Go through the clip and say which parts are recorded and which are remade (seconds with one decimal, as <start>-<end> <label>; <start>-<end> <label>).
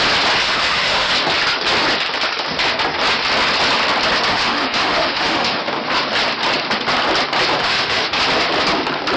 0.0-0.4 recorded; 0.4-1.1 remade; 1.1-4.3 recorded; 4.3-5.6 remade; 5.6-7.6 recorded; 7.6-8.2 remade; 8.2-9.2 recorded